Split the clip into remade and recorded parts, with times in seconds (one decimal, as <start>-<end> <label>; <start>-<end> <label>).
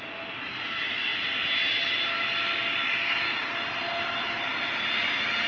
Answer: 0.0-5.5 recorded